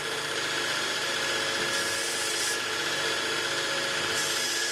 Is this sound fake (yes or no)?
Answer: no